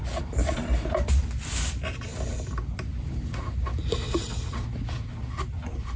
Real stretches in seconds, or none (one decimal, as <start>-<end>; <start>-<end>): 0.0-6.0